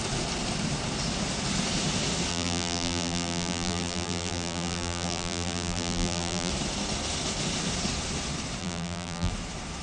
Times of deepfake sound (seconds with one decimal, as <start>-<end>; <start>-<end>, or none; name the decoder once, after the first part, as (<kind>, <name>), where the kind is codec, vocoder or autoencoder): 2.3-6.5 (vocoder, BigVGAN v2); 8.6-9.3